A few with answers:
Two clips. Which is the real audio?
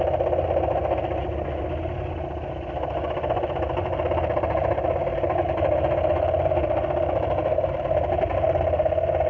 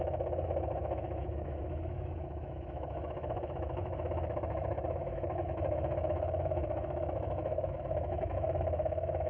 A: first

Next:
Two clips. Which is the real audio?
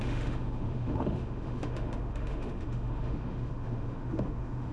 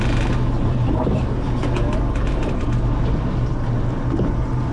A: second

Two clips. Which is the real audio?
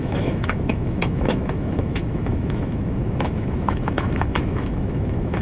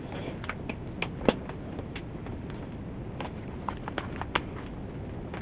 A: second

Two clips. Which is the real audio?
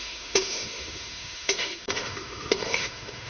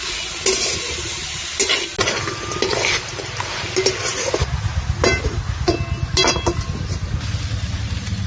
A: second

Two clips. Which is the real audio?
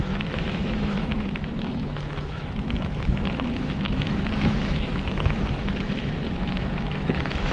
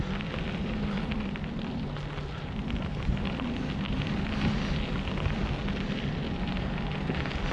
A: second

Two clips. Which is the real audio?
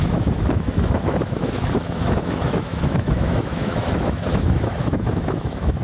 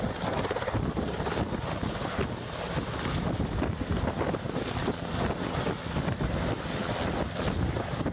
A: second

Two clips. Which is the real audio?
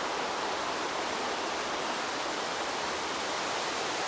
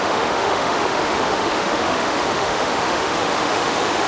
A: first